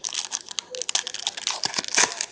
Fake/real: real